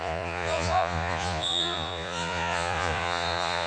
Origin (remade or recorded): remade